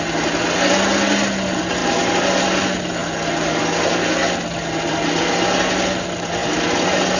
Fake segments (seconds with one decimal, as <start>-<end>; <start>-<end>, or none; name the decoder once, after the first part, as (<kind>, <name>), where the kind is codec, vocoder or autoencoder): 1.8-2.6 (vocoder, BigVGAN v2); 6.4-7.2